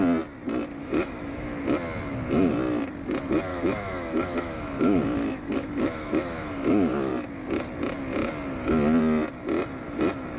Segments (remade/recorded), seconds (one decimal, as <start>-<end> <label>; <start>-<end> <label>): 0.0-0.8 recorded; 0.8-1.6 remade; 1.6-3.5 recorded; 3.5-7.1 remade; 7.1-10.4 recorded